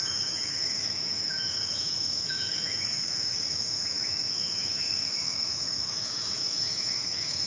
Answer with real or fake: fake